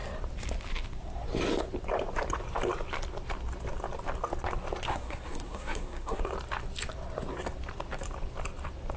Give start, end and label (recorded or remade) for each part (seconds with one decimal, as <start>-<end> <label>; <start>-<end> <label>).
0.0-4.9 recorded; 4.9-6.2 remade; 6.2-9.0 recorded